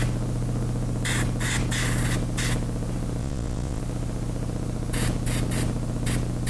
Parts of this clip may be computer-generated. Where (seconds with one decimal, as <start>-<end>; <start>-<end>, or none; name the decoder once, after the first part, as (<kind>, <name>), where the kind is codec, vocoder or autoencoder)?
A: 3.2-3.8 (vocoder, Vocos)